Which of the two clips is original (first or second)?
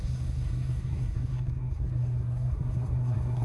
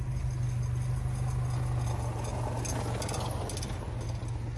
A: second